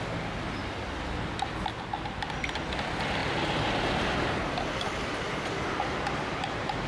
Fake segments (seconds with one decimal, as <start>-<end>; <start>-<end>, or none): none